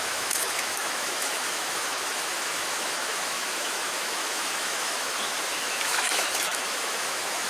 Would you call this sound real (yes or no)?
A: no